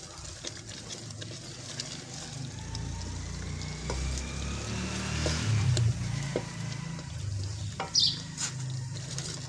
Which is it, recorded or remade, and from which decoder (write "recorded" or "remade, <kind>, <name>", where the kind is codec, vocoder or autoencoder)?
recorded